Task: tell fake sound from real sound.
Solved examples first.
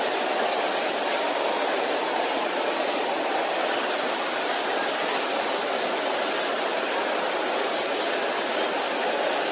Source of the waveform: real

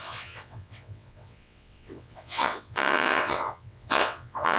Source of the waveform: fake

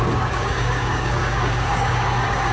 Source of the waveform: fake